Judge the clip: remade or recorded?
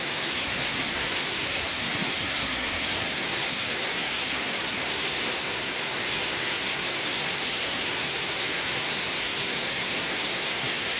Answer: remade